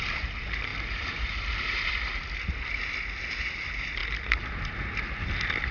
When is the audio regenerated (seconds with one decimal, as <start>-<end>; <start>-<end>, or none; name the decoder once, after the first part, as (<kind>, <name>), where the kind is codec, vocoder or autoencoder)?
none